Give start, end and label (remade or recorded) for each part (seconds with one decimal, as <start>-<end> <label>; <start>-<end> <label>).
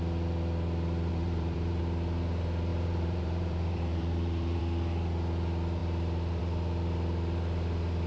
0.0-1.1 recorded; 1.1-1.8 remade; 1.8-2.7 recorded; 2.7-4.6 remade; 4.6-8.1 recorded